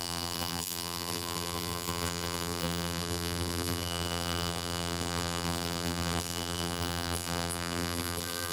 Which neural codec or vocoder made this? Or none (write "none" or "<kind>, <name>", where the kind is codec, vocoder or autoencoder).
vocoder, BigVGAN v2